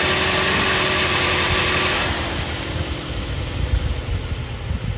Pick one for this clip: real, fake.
real